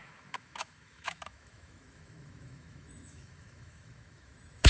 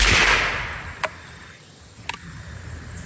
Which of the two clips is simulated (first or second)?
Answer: first